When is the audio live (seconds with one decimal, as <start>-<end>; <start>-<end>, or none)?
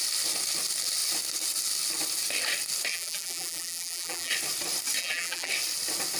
0.0-2.9; 4.3-5.0; 5.5-6.2